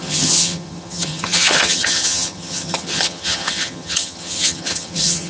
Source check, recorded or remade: remade